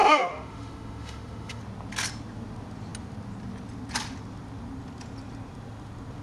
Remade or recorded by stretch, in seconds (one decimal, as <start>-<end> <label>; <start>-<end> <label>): 0.0-1.6 remade; 1.6-6.2 recorded